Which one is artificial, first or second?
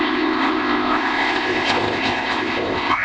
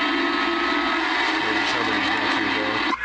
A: first